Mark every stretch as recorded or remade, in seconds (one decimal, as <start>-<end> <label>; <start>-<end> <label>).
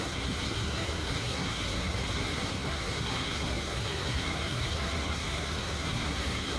0.0-6.6 remade